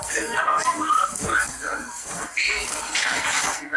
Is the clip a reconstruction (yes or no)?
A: yes